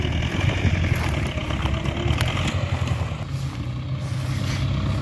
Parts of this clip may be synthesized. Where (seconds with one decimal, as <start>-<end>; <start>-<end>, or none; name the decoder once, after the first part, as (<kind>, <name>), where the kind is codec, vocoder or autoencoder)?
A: none